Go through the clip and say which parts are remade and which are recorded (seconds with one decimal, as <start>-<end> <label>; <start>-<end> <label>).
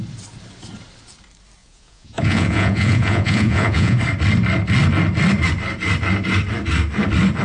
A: 0.0-1.6 recorded; 1.6-4.0 remade; 4.0-7.4 recorded